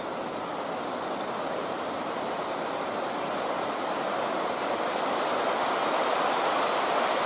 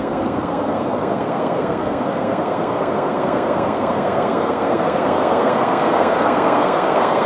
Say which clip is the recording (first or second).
first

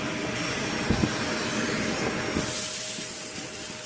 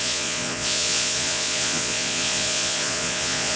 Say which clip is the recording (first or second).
first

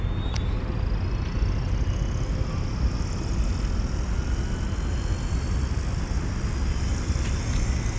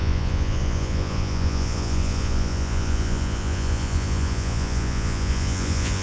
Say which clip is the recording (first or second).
first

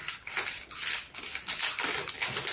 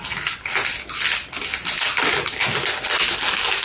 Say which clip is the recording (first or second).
second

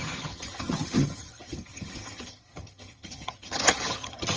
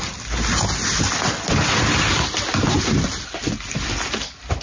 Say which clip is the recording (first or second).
second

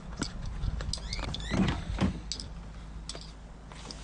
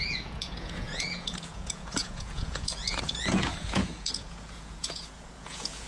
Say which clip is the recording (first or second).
first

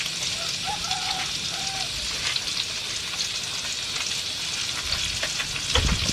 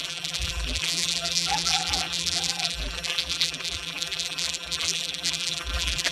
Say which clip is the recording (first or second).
first